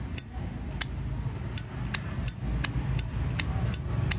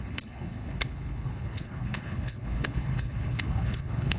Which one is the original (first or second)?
first